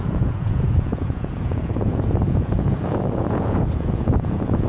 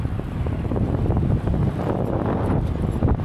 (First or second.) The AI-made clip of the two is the first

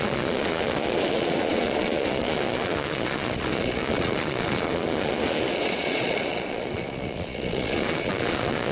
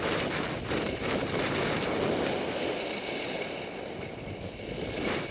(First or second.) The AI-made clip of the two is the first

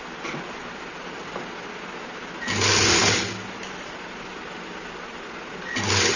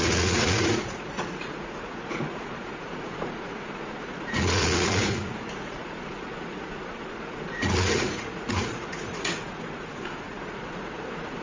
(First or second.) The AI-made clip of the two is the second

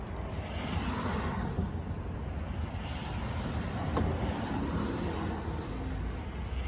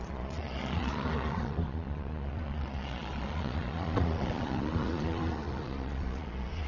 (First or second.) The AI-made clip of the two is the second